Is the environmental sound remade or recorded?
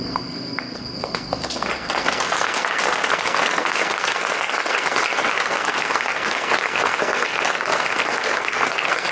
remade